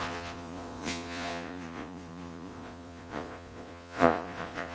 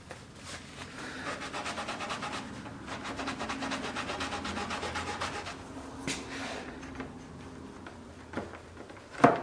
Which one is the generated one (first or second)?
first